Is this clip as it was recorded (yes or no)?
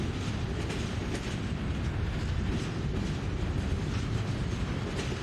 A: yes